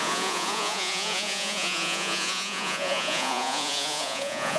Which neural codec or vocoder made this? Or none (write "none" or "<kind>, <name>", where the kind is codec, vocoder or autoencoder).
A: vocoder, Vocos